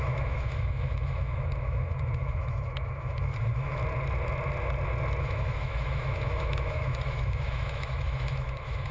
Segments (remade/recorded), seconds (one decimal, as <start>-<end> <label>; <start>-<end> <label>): 0.0-3.8 remade; 3.8-5.2 recorded; 5.2-8.9 remade